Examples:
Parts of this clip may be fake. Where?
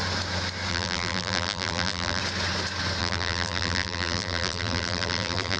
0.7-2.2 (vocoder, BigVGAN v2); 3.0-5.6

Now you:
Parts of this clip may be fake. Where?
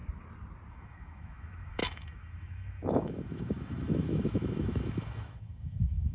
0.7-6.1 (autoencoder, DAC-VAE)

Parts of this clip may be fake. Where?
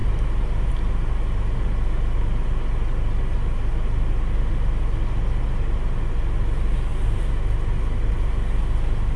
none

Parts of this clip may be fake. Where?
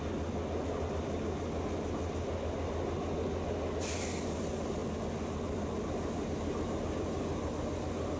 none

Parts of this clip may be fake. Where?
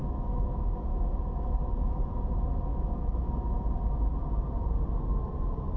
0.0-0.7 (autoencoder, DAC-VAE); 2.7-3.3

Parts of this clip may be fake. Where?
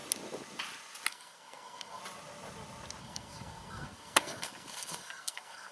1.1-2.0 (codec, SNAC); 3.0-5.7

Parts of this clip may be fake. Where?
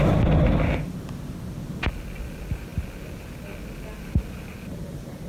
none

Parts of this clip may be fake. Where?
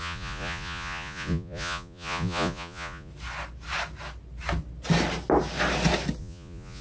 0.0-3.1 (vocoder, Vocos); 6.2-6.8